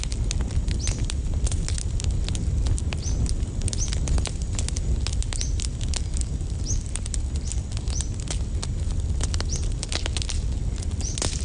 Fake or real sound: real